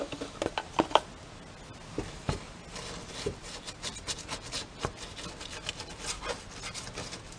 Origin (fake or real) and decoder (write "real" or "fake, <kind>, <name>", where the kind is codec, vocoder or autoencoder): real